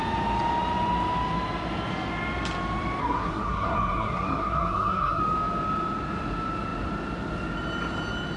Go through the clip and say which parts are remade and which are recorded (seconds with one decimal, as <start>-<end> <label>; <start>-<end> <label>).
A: 0.0-3.0 recorded; 3.0-5.2 remade; 5.2-8.4 recorded